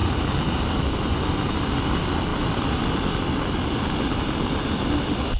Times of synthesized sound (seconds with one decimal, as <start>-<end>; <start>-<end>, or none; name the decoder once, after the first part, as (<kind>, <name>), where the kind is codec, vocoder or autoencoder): none